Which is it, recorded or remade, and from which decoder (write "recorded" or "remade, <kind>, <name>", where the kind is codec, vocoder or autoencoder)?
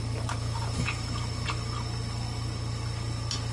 recorded